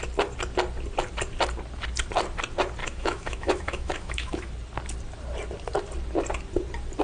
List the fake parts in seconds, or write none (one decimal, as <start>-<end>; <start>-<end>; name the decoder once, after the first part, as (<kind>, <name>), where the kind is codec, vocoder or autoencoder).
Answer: 2.8-4.5 (autoencoder, DAC-VAE)